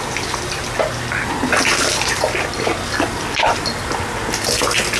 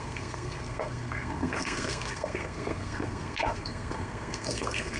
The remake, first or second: second